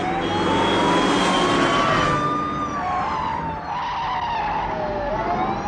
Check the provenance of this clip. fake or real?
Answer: real